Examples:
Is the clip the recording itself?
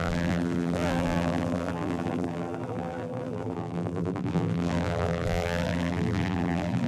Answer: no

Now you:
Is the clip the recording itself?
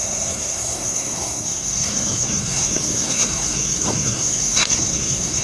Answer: no